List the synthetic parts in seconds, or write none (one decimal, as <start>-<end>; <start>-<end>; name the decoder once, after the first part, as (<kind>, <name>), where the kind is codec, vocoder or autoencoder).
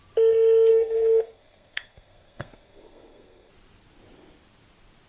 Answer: 0.7-3.5 (codec, SNAC)